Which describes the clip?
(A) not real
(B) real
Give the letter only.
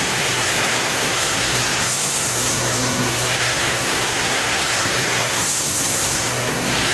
A